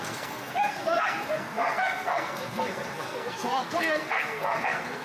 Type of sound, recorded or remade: remade